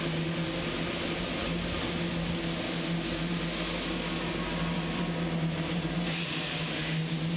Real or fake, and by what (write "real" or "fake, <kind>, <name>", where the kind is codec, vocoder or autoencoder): real